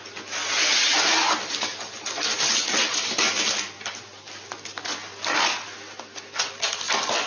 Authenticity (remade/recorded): recorded